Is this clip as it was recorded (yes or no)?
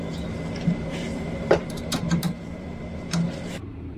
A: no